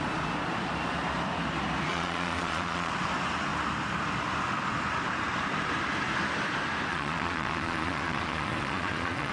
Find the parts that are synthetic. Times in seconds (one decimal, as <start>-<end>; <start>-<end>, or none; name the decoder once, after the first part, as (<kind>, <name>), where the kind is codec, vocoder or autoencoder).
1.9-2.9 (vocoder, Vocos); 6.9-9.3